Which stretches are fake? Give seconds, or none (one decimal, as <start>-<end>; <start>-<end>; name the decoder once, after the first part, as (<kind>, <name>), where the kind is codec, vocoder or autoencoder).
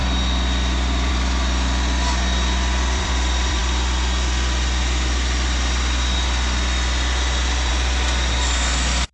0.0-3.6 (vocoder, BigVGAN v2); 7.7-9.1